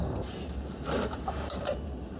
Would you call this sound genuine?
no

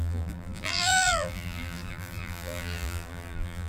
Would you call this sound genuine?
no